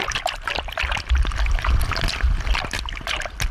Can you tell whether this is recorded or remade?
recorded